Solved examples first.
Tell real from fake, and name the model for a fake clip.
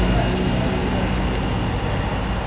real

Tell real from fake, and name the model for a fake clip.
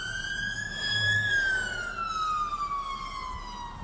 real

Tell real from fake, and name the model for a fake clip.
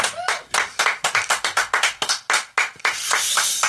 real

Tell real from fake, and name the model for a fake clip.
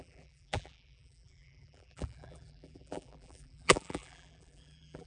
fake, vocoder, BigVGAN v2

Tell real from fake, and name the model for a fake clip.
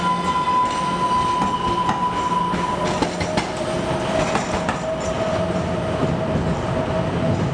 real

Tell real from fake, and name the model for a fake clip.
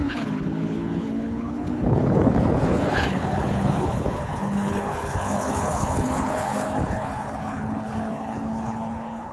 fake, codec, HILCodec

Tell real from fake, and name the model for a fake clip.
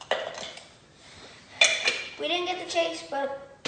real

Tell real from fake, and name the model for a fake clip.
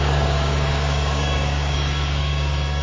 fake, codec, DAC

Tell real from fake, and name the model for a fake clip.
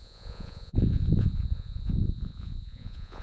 fake, vocoder, Vocos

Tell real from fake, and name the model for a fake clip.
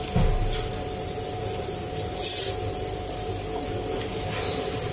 real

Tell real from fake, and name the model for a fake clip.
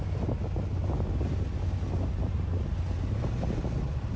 real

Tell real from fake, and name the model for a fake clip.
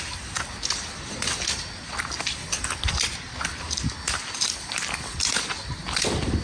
real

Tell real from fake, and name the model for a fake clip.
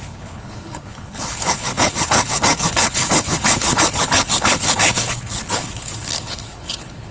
fake, codec, HILCodec